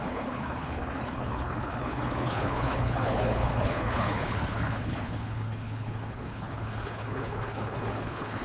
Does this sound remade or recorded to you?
remade